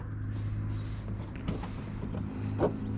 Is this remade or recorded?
recorded